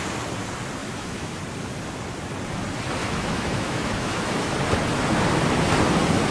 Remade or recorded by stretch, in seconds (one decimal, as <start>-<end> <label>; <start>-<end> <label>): 0.0-0.8 recorded; 0.8-1.4 remade; 1.4-3.0 recorded; 3.0-4.5 remade; 4.5-6.3 recorded